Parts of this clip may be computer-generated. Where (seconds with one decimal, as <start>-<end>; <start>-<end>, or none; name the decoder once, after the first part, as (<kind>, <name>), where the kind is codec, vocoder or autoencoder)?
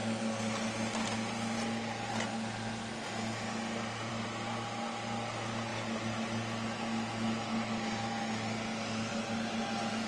none